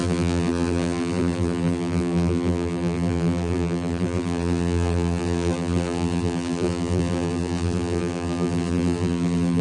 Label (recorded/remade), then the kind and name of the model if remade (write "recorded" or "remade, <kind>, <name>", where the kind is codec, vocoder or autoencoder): remade, vocoder, BigVGAN v2